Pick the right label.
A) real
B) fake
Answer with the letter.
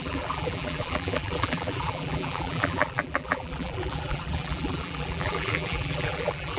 B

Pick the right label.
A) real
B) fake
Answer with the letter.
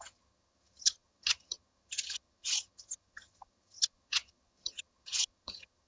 B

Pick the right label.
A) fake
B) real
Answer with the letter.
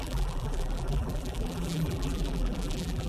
A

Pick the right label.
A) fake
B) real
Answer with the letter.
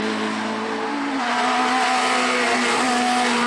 B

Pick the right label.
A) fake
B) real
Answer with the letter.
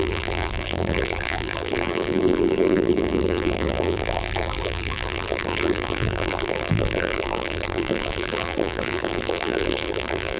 A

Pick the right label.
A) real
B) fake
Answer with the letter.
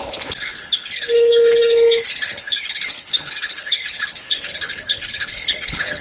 B